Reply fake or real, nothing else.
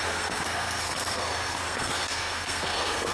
fake